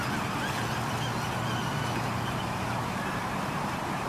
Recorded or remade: recorded